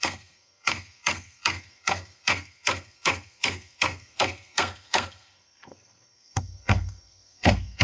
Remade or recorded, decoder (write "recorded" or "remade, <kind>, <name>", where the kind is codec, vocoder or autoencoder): remade, codec, SNAC